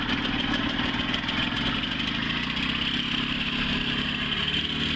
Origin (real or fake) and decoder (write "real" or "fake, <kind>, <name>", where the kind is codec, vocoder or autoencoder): real